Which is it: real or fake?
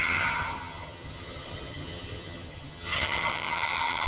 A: fake